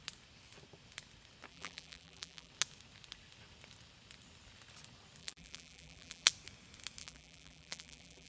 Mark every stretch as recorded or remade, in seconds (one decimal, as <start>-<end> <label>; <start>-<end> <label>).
0.0-1.5 recorded; 1.5-2.5 remade; 2.5-5.2 recorded; 5.2-6.3 remade; 6.3-7.0 recorded; 7.0-8.3 remade